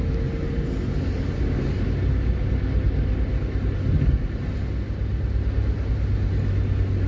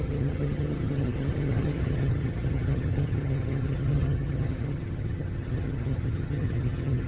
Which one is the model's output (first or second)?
second